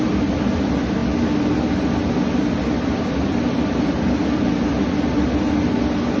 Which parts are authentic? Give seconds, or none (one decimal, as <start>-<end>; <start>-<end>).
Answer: 0.0-6.2